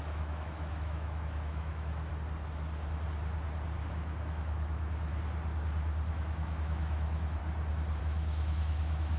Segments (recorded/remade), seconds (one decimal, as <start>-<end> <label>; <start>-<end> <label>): 0.0-2.1 remade; 2.1-3.9 recorded; 3.9-5.1 remade; 5.1-6.1 recorded; 6.1-7.4 remade; 7.4-8.0 recorded; 8.0-9.2 remade